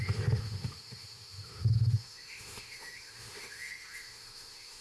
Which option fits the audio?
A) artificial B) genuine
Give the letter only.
A